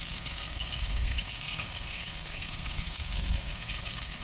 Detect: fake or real fake